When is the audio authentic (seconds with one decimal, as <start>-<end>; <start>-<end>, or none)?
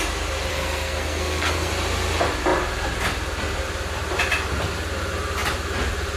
0.0-0.5; 1.7-6.2